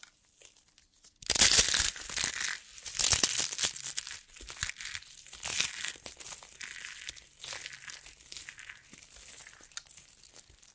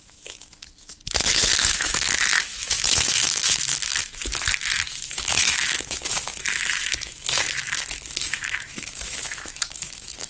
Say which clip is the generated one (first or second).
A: second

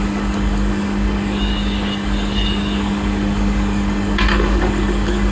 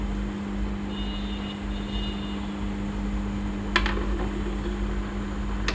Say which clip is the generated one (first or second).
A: first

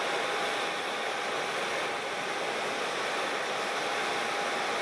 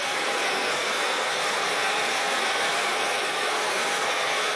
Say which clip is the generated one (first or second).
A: second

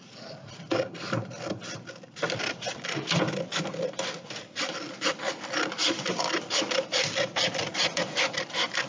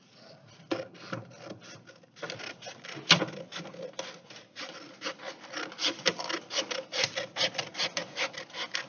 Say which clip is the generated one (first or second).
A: first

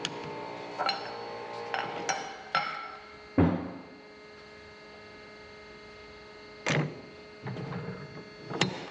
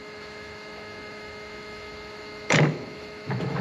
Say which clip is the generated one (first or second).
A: second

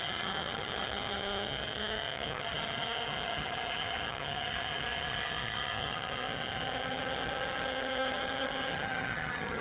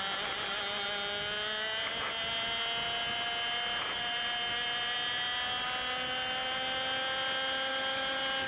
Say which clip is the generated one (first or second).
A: first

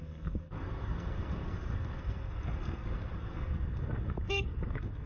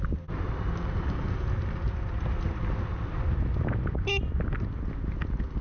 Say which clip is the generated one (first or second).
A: first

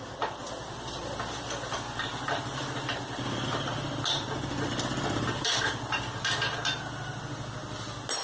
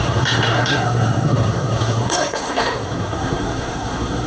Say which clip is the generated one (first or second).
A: second